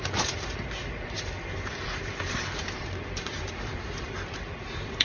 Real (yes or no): no